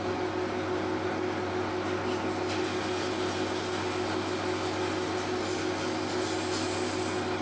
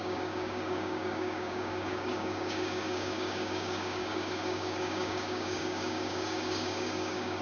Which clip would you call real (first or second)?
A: first